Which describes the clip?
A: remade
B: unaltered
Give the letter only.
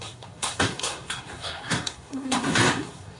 A